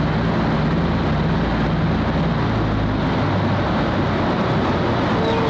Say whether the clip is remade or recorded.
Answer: recorded